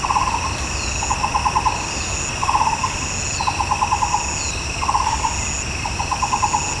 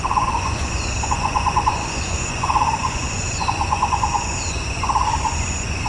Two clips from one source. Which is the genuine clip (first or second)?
first